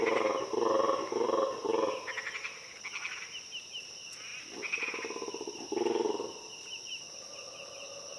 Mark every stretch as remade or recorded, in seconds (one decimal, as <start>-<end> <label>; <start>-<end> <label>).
0.0-8.2 recorded